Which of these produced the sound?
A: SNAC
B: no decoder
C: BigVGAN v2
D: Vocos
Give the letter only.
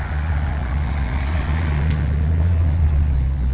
D